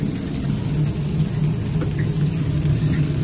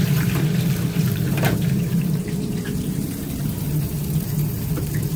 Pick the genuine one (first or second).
first